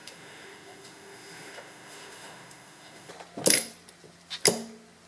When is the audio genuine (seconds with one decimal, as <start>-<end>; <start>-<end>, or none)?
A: 3.1-5.1